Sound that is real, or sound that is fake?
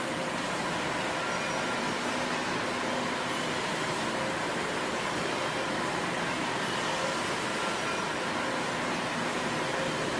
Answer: real